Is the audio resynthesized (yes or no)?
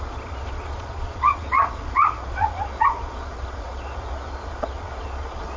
yes